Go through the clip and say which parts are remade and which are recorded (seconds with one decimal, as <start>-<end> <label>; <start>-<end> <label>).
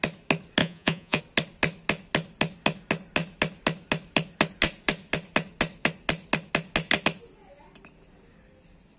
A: 0.0-0.6 recorded; 0.6-1.2 remade; 1.2-9.0 recorded